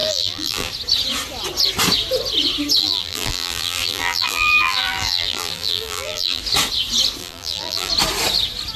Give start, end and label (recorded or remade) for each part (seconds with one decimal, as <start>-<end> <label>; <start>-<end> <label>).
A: 0.0-0.7 remade; 0.7-2.8 recorded; 2.8-6.4 remade; 6.4-7.2 recorded; 7.2-7.9 remade; 7.9-8.8 recorded